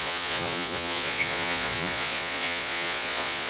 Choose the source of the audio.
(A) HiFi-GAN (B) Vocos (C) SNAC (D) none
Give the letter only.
B